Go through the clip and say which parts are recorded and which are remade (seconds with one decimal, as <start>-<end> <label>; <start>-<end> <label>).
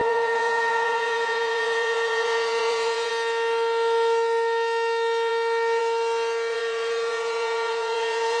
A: 0.0-3.1 remade; 3.1-6.5 recorded; 6.5-8.4 remade